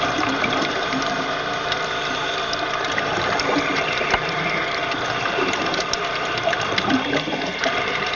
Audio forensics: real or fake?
fake